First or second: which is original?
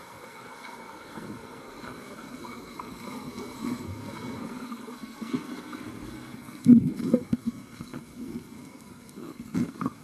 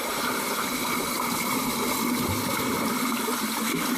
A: second